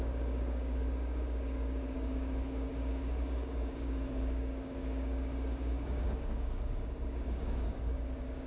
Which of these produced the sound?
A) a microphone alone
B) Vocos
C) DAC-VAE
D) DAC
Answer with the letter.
D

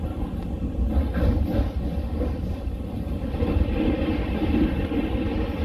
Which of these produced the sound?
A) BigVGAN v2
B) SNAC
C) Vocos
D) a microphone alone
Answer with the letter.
D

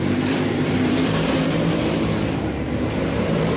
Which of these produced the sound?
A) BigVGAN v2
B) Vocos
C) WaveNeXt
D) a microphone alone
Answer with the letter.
A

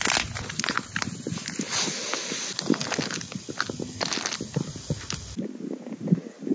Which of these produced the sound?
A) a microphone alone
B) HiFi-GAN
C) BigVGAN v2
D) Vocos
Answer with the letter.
A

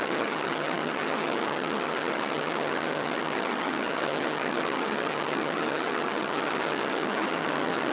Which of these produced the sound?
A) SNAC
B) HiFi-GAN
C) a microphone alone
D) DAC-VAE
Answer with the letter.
B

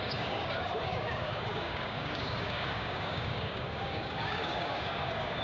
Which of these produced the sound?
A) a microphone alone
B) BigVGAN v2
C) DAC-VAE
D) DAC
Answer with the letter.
D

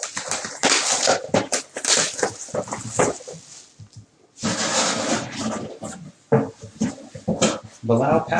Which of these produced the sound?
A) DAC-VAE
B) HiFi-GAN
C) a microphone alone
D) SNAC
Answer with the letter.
C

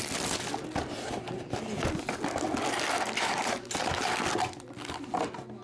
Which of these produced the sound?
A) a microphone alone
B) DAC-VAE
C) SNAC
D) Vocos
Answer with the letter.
A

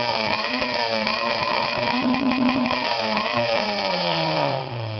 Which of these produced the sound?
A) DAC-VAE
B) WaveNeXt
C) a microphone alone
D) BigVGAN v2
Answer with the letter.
B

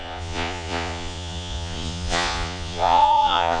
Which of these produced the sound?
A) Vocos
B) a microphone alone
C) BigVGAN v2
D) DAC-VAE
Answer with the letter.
A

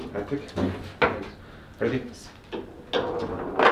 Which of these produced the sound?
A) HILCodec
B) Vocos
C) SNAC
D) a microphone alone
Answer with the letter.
D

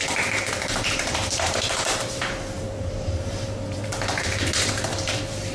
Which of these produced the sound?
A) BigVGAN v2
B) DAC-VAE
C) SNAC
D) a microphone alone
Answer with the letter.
A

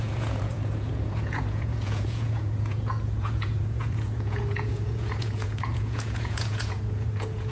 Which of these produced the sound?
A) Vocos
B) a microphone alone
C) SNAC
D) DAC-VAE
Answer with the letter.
A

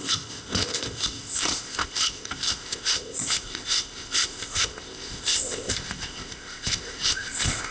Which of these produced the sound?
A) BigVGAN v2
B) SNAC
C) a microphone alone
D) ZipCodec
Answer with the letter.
D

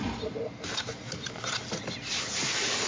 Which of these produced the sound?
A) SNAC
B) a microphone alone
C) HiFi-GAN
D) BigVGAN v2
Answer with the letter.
B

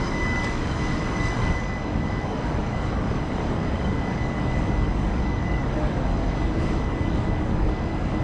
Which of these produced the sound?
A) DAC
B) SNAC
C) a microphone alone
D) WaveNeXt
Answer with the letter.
A